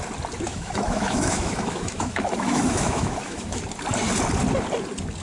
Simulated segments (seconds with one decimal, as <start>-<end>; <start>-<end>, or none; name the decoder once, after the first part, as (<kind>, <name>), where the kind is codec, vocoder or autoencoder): 0.5-3.6 (autoencoder, DAC-VAE)